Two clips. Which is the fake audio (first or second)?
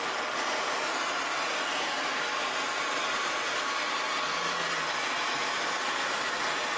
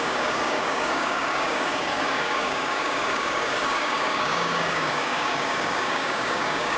second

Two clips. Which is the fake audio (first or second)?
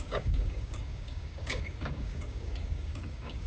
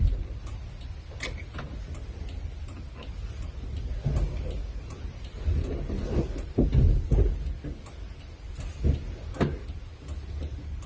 first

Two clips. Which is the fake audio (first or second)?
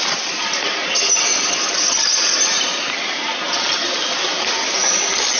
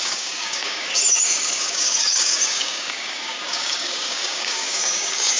second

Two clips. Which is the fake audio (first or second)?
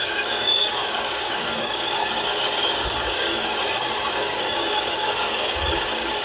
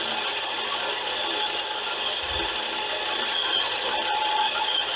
first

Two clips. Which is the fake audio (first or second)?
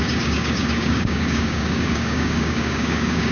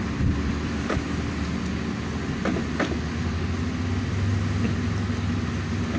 first